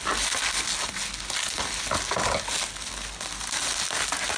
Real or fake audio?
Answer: real